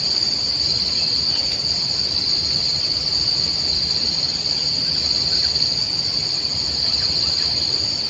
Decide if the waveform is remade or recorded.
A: recorded